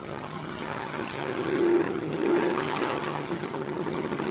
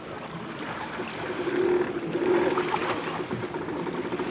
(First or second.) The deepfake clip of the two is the first